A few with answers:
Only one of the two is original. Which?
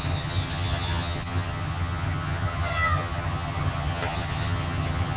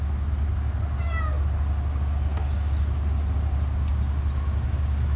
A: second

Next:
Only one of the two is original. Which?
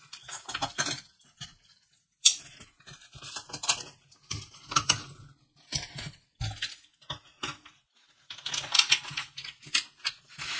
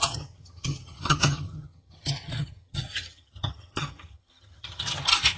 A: first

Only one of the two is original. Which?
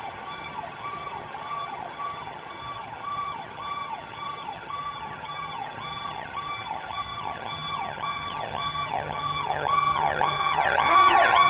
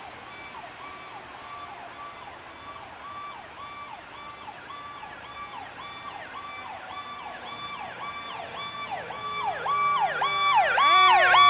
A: second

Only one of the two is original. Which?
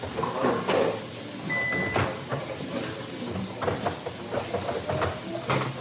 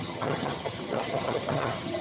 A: first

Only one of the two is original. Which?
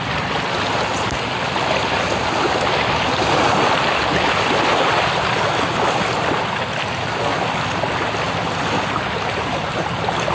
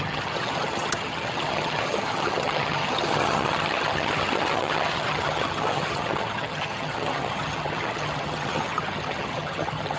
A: first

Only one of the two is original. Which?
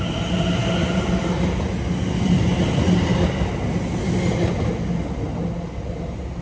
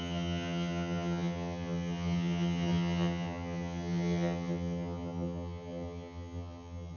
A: first